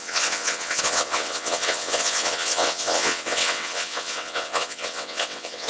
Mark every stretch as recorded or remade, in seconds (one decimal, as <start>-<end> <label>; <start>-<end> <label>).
0.0-5.7 remade